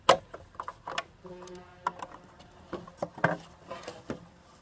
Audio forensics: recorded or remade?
recorded